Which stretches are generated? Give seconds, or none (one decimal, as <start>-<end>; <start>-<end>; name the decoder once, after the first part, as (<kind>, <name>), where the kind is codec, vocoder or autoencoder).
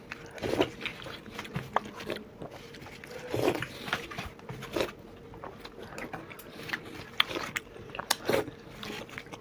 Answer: none